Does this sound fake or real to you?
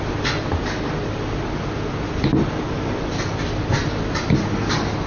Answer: real